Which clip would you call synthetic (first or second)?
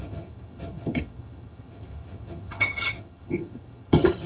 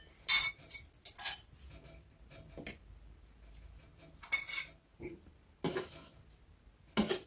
first